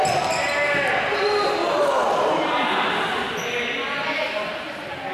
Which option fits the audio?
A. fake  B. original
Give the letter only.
B